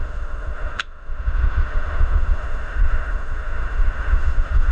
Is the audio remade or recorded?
remade